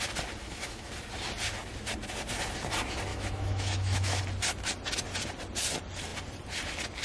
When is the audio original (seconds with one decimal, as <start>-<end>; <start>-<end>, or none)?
0.0-0.4; 0.9-3.1; 4.2-7.0